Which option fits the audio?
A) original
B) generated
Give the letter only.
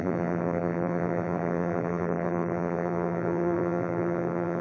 B